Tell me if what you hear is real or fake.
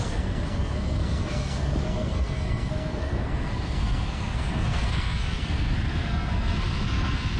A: fake